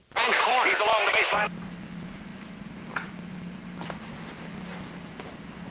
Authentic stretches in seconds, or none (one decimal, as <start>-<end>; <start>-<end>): 0.0-5.7